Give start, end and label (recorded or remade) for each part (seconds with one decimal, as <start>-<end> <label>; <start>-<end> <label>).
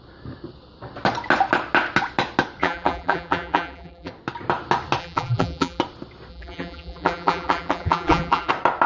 0.0-2.6 recorded; 2.6-4.1 remade; 4.1-5.0 recorded; 5.0-5.8 remade; 5.8-6.3 recorded; 6.3-8.5 remade; 8.5-8.9 recorded